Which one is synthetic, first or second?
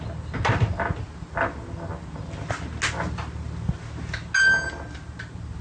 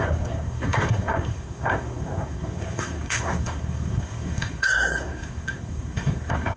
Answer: second